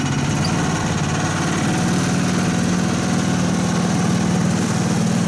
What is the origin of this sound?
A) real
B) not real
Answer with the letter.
A